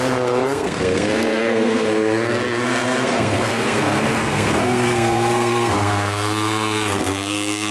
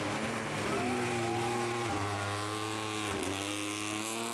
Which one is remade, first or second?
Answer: first